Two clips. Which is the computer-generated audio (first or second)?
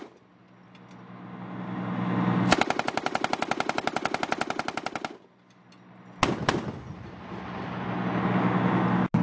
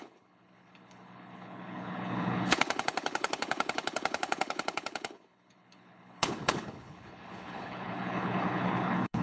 second